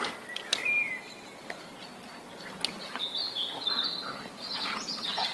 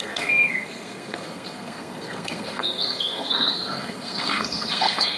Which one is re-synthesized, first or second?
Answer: second